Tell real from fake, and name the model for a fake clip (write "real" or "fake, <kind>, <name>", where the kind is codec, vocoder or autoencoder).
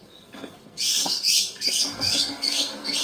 fake, codec, SNAC